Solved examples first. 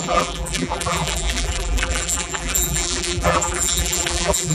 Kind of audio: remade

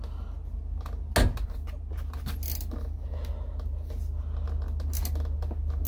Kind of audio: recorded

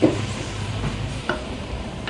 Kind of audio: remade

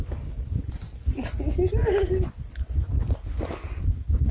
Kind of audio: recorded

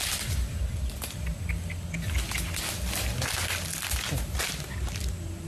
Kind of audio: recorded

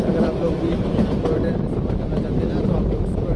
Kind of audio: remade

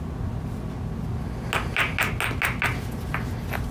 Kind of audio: recorded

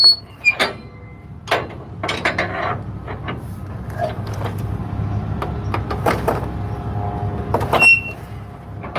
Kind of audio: recorded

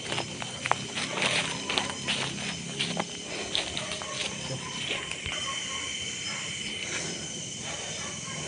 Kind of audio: recorded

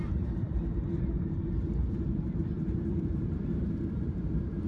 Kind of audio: remade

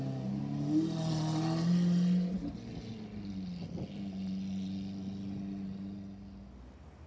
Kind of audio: recorded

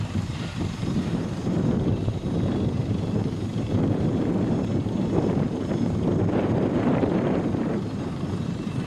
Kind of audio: remade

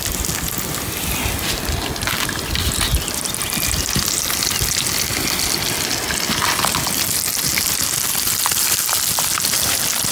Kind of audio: recorded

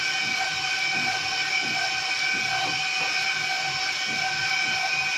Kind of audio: recorded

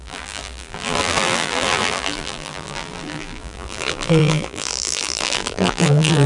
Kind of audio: remade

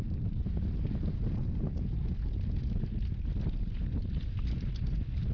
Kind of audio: recorded